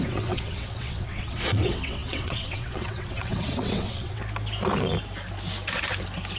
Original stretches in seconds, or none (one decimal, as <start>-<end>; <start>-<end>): 4.2-6.4